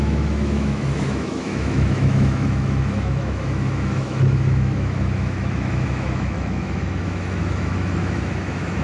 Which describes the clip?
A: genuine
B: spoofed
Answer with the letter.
B